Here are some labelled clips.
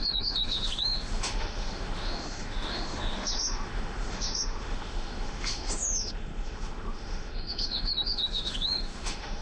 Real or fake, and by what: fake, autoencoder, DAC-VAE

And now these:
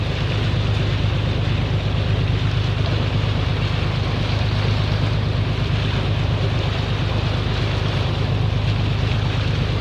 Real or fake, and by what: real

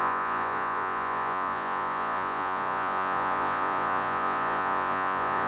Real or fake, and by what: fake, vocoder, Vocos